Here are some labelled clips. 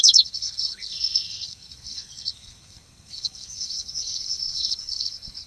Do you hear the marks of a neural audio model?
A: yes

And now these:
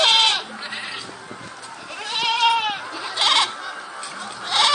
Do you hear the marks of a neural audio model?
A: no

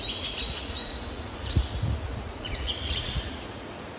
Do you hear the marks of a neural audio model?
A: yes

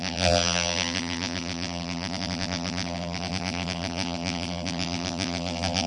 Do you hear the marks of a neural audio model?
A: yes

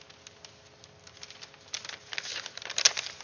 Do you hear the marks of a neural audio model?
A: no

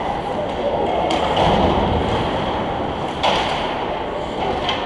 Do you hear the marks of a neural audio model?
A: no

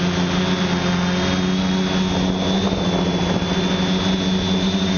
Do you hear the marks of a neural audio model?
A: no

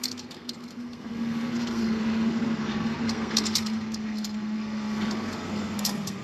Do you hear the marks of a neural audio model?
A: yes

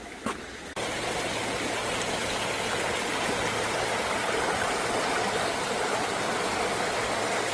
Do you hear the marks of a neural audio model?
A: no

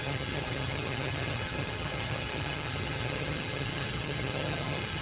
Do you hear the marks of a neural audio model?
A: yes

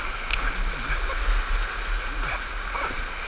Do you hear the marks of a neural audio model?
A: no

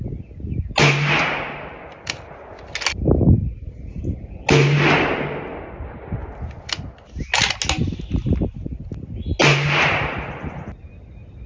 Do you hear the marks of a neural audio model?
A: no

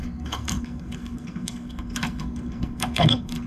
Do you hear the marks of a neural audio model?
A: yes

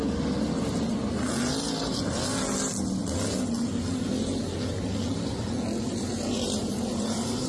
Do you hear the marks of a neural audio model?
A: no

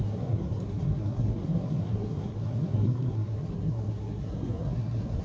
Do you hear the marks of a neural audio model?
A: yes